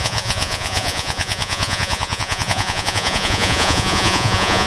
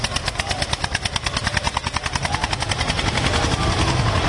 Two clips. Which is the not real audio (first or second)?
first